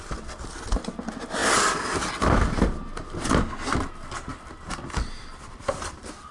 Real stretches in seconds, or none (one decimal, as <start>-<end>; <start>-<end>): 0.0-1.4; 2.1-6.3